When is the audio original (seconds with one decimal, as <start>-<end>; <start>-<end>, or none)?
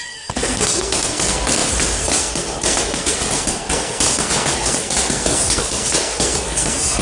none